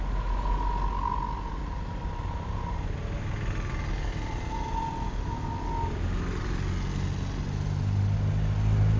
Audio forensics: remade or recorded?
recorded